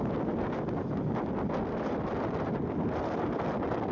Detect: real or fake real